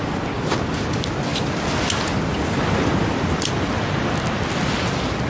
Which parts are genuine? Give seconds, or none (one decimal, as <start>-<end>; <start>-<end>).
0.0-1.3; 4.3-5.3